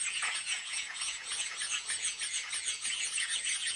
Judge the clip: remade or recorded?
remade